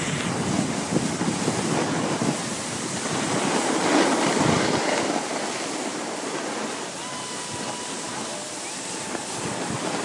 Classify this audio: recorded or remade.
recorded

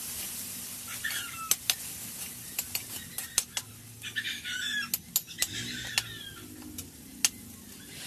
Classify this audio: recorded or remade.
recorded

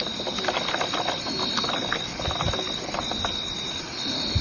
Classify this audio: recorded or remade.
recorded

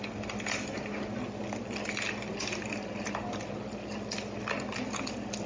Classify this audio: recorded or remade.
recorded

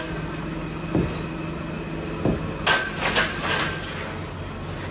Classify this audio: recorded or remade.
recorded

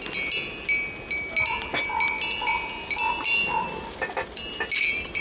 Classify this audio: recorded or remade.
recorded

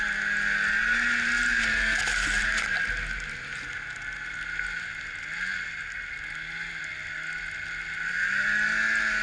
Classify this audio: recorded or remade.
recorded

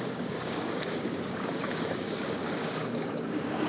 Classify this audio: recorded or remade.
remade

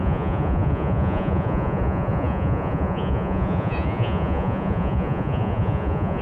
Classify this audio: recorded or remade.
remade